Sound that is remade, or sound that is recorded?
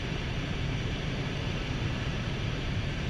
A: remade